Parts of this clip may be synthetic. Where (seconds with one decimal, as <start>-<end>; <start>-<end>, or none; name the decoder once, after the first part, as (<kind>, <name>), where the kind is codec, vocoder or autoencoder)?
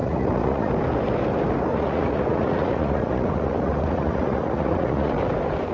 0.0-0.7 (vocoder, Vocos); 1.7-5.1